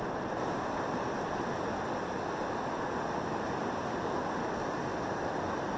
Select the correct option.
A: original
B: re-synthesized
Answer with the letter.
A